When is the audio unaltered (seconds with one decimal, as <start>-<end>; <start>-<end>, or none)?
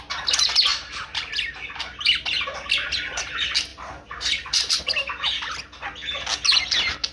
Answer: 0.0-0.7; 1.8-3.7; 4.8-7.1